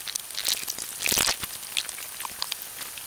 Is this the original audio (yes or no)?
yes